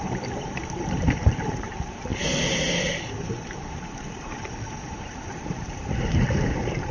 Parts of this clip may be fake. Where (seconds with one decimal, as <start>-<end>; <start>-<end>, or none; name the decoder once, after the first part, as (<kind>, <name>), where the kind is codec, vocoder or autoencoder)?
0.0-2.1 (vocoder, BigVGAN v2); 3.0-6.9